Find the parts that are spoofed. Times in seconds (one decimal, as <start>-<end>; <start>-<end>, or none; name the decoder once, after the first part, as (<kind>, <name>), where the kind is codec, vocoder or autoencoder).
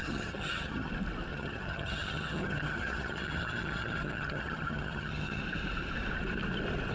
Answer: 0.0-0.9 (vocoder, HiFi-GAN); 1.3-5.4